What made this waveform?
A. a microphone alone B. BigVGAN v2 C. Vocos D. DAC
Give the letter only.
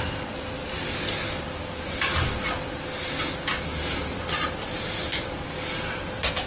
A